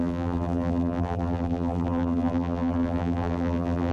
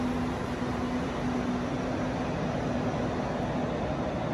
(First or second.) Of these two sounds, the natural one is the second